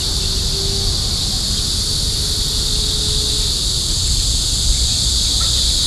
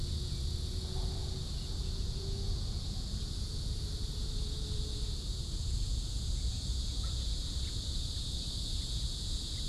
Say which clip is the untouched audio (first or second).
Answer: first